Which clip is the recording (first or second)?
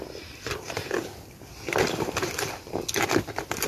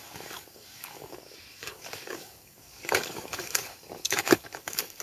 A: first